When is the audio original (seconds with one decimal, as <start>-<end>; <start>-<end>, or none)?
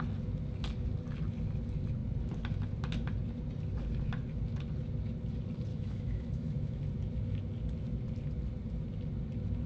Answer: 0.0-5.7; 6.8-9.7